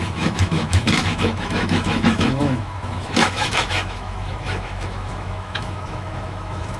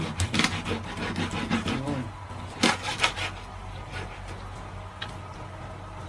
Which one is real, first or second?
second